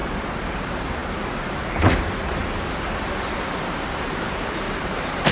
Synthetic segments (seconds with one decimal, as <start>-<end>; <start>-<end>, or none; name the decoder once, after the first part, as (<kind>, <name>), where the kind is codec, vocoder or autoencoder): 0.6-1.0 (vocoder, BigVGAN v2); 4.2-5.3